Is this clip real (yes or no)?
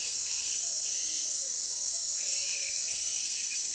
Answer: no